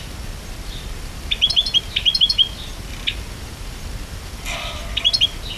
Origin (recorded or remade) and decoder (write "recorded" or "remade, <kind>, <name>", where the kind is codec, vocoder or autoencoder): recorded